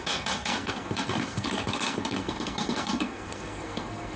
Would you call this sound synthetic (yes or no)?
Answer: yes